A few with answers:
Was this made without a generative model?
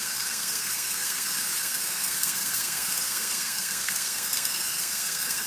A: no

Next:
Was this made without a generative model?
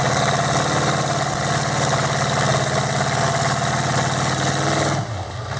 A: yes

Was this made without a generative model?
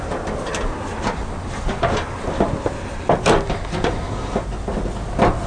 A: yes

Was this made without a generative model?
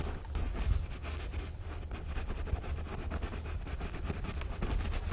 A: yes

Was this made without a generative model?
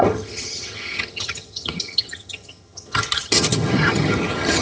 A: no